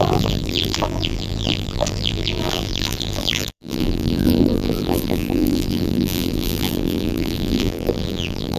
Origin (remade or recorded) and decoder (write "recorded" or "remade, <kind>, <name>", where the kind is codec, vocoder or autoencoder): remade, vocoder, BigVGAN v2